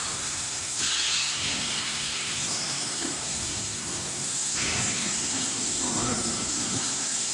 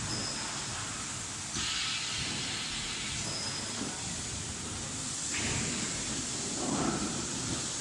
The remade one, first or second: first